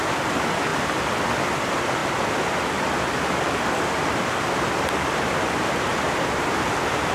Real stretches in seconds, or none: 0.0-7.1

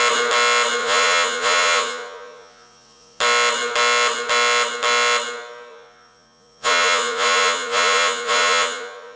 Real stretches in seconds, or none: 0.0-0.8; 3.2-5.7

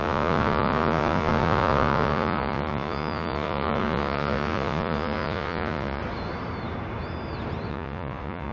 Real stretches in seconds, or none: 6.0-7.7

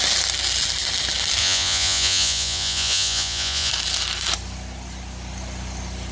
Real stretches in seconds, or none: 0.0-1.4; 3.7-6.1

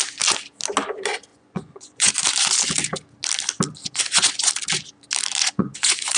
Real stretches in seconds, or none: 0.0-1.3; 2.1-3.8; 4.5-5.4

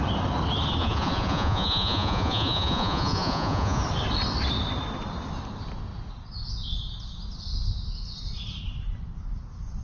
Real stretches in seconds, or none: 0.0-0.8; 3.8-9.8

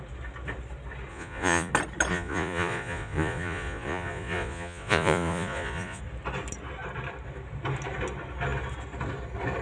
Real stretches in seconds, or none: 0.0-1.1; 1.7-2.1; 6.0-9.6

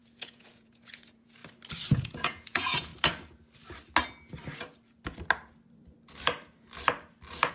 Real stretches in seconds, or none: 1.4-1.9; 2.9-7.5